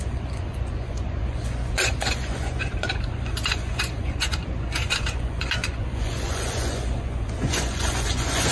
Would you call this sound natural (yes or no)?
no